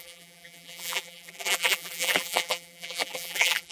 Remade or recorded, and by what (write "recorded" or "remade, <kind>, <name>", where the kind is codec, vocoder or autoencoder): remade, vocoder, BigVGAN v2